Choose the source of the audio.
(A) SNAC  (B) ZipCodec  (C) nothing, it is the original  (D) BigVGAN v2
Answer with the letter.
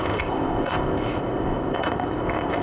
B